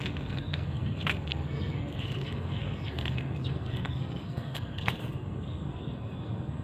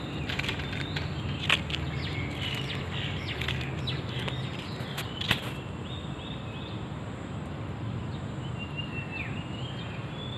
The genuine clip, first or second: second